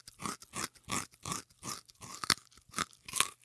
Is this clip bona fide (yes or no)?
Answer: yes